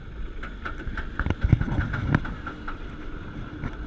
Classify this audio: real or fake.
real